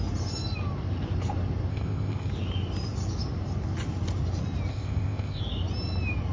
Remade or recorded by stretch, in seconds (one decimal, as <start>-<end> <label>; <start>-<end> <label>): 0.0-1.7 recorded; 1.7-2.3 remade; 2.3-4.7 recorded; 4.7-5.4 remade; 5.4-6.3 recorded